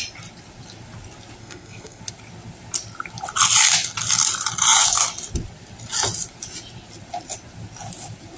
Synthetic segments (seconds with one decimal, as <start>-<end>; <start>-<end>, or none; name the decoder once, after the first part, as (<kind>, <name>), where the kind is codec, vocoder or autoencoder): 1.4-2.0 (codec, SNAC)